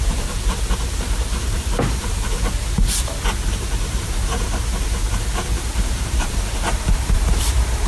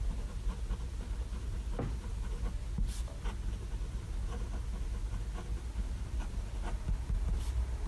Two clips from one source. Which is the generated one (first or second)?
first